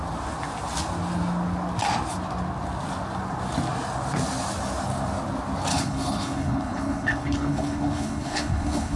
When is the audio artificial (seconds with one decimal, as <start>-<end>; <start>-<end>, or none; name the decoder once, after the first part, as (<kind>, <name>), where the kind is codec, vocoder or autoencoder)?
5.7-9.0 (codec, HILCodec)